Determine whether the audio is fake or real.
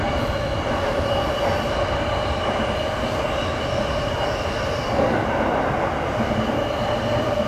real